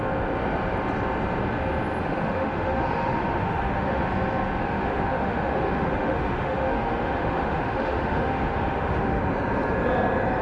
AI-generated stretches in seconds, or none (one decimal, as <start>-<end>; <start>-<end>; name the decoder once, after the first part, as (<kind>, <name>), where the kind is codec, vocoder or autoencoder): 2.0-4.0 (autoencoder, DAC-VAE); 4.6-9.2